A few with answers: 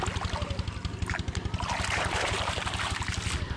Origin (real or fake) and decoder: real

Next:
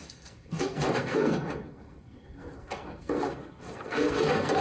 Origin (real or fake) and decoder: fake, codec, SNAC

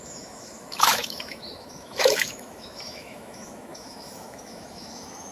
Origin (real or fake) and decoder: fake, autoencoder, DAC-VAE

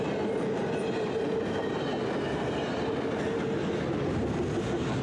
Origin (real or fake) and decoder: real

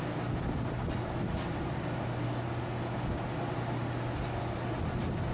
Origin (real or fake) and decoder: real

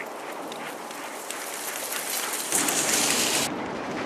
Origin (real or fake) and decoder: real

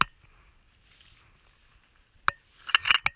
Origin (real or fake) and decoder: real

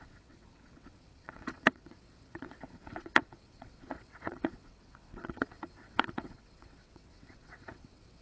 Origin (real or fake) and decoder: fake, vocoder, WaveNeXt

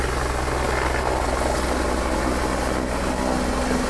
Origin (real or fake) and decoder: real